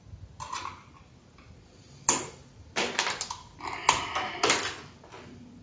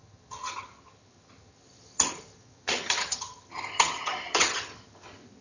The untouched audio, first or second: first